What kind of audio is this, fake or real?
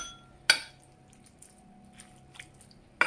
real